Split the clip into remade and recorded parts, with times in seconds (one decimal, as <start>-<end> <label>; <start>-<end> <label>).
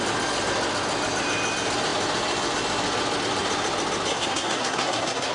0.0-4.1 recorded; 4.1-5.3 remade